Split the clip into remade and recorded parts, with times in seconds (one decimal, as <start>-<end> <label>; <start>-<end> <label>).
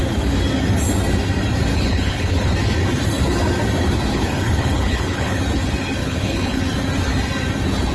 0.0-1.7 recorded; 1.7-2.5 remade; 2.5-4.1 recorded; 4.1-5.4 remade; 5.4-6.0 recorded; 6.0-6.6 remade; 6.6-7.9 recorded